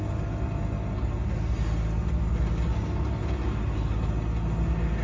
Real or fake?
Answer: real